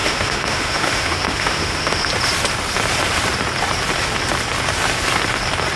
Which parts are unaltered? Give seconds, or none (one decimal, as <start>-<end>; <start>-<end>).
2.1-5.8